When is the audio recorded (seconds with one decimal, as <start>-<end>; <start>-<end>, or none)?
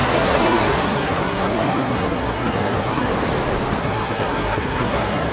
3.1-3.8